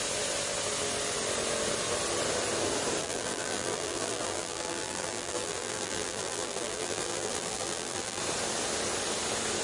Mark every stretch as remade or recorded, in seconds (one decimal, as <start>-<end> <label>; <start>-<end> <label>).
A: 0.0-3.0 recorded; 3.0-8.2 remade; 8.2-9.6 recorded